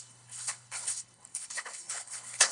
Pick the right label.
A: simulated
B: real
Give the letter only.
A